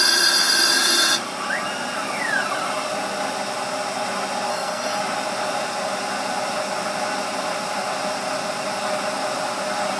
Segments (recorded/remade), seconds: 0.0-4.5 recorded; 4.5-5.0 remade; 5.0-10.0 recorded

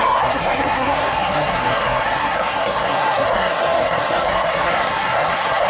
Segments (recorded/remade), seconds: 0.0-5.7 remade

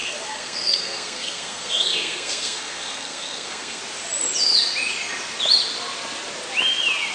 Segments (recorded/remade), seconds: 0.0-3.8 remade; 3.8-7.1 recorded

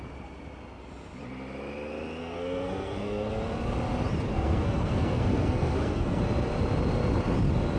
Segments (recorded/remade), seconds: 0.0-2.2 recorded; 2.2-3.3 remade; 3.3-4.3 recorded; 4.3-6.2 remade; 6.2-7.8 recorded

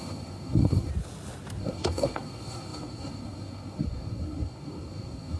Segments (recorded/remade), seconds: 0.0-0.9 remade; 0.9-1.6 recorded; 1.6-5.4 remade

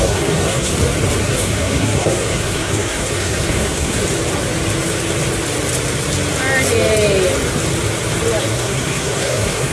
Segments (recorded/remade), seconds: 0.0-0.7 remade; 0.7-1.2 recorded; 1.2-4.0 remade; 4.0-8.4 recorded; 8.4-9.7 remade

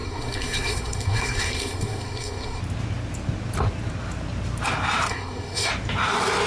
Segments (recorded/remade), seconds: 0.0-2.6 remade; 2.6-5.1 recorded; 5.1-5.7 remade; 5.7-6.5 recorded

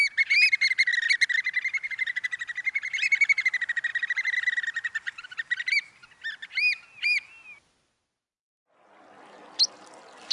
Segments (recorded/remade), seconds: 0.0-10.3 recorded